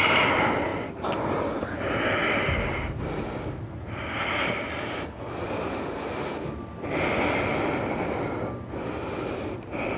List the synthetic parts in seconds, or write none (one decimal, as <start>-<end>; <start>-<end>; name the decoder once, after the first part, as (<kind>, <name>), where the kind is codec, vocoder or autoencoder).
none